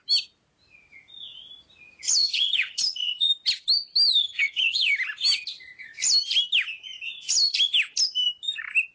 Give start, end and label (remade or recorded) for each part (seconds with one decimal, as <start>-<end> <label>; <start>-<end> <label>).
0.0-2.2 recorded; 2.2-3.3 remade; 3.3-4.2 recorded; 4.2-4.9 remade; 4.9-8.9 recorded